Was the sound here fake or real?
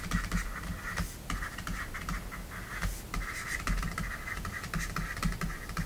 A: real